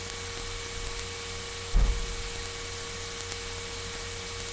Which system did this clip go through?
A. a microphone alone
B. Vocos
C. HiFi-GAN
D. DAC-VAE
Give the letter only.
A